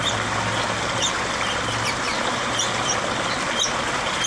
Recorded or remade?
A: recorded